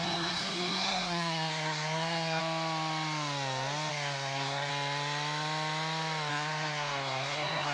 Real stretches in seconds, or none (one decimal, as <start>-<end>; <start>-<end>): 2.4-3.9; 4.7-6.3